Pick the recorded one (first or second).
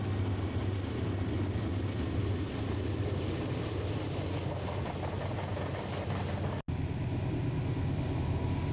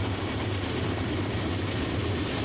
first